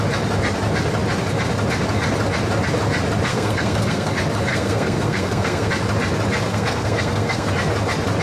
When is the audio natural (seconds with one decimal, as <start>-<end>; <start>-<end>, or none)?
0.0-3.3; 4.1-4.5; 5.7-6.5; 7.5-8.2